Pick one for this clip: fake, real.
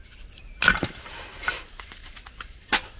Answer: real